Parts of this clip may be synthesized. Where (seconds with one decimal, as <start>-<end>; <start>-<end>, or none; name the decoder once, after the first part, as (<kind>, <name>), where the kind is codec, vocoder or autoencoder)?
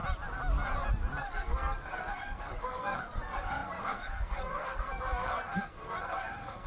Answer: 1.2-6.7 (codec, SNAC)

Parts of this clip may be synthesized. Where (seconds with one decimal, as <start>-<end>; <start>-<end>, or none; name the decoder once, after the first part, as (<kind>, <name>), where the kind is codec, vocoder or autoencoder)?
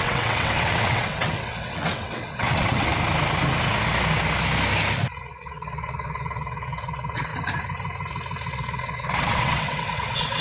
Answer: 0.0-2.9 (vocoder, WaveNeXt); 5.2-7.3; 8.5-10.4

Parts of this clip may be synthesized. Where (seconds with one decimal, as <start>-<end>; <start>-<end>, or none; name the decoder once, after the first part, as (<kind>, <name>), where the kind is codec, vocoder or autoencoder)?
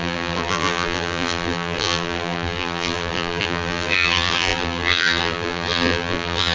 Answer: 0.0-6.5 (vocoder, BigVGAN v2)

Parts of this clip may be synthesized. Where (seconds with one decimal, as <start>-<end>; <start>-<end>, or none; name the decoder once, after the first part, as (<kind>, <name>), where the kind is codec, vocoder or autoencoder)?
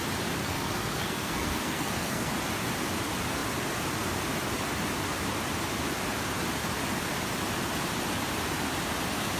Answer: 0.4-2.3 (codec, SNAC)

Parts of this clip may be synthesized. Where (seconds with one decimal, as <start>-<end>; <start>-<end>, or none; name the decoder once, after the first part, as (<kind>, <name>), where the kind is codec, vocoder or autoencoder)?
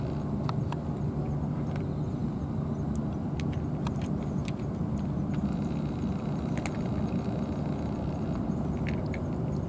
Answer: none